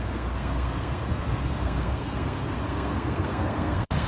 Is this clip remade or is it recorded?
remade